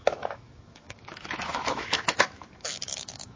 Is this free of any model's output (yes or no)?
no